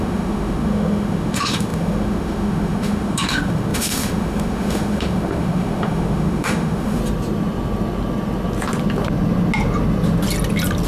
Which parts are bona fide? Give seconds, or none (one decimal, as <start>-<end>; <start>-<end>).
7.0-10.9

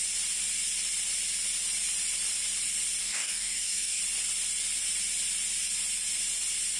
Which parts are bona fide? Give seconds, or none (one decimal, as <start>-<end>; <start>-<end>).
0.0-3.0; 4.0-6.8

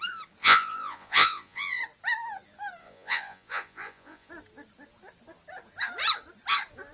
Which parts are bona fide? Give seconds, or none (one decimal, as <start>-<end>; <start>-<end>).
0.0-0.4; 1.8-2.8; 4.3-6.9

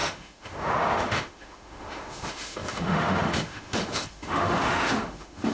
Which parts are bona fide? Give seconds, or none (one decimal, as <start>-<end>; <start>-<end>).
none

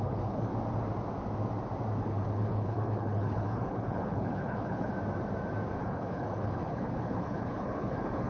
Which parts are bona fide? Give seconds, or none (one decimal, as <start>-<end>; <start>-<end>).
0.5-2.0; 4.9-5.8

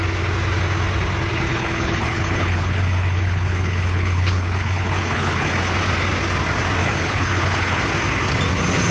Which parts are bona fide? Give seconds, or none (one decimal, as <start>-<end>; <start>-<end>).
0.0-1.5; 5.5-6.8; 7.8-8.9